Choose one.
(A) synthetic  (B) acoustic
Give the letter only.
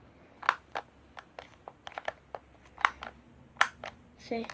B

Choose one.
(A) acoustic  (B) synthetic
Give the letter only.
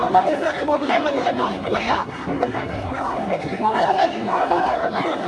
B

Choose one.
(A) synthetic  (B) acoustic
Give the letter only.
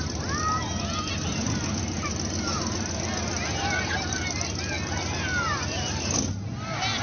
B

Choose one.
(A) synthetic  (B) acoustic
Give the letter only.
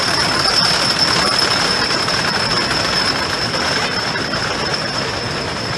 B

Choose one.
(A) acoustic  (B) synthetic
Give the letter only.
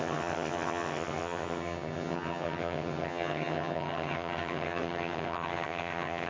B